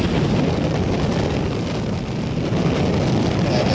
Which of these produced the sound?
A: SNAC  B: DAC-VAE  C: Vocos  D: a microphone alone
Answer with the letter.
D